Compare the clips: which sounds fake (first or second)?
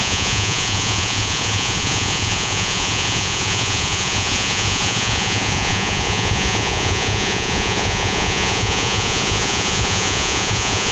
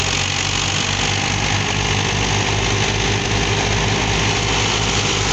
first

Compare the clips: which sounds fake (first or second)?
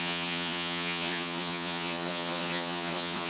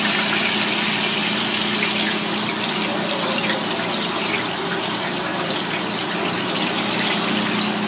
first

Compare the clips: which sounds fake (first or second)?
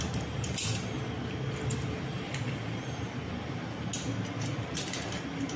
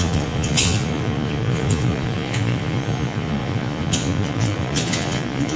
second